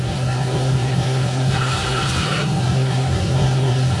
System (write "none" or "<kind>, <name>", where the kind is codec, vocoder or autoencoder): codec, SNAC